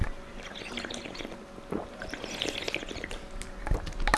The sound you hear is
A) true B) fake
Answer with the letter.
A